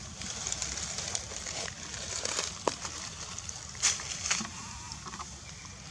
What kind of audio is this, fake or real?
real